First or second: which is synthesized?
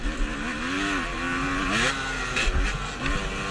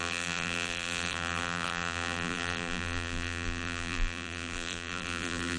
second